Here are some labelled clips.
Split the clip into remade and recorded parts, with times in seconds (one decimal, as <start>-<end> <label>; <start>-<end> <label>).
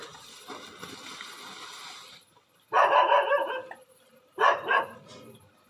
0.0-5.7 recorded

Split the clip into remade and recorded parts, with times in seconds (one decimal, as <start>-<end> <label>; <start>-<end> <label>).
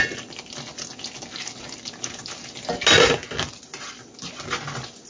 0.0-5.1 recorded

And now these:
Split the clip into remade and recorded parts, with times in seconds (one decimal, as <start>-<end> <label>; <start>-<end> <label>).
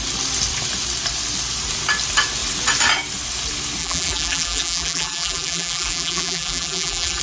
0.0-3.8 recorded; 3.8-7.2 remade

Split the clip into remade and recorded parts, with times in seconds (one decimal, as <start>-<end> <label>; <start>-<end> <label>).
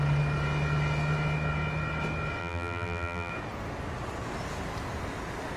0.0-2.4 recorded; 2.4-3.3 remade; 3.3-5.6 recorded